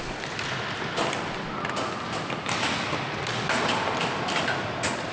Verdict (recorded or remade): recorded